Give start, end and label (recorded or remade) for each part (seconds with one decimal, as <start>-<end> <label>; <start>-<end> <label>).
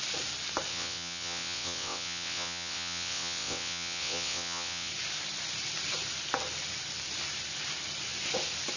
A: 0.0-0.7 recorded; 0.7-4.9 remade; 4.9-8.8 recorded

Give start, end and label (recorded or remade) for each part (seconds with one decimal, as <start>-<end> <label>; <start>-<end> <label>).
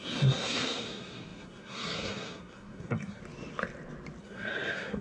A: 0.0-3.2 remade; 3.2-4.2 recorded; 4.2-5.0 remade